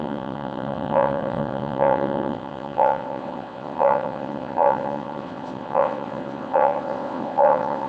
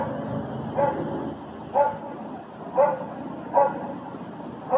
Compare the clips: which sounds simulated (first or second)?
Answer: first